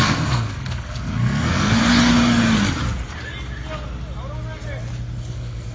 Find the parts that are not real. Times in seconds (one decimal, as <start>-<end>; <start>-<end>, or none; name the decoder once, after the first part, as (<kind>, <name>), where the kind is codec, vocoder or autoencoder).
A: 0.0-1.8 (codec, SNAC); 5.2-5.7